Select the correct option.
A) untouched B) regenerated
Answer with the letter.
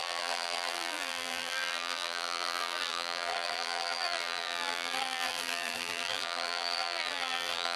B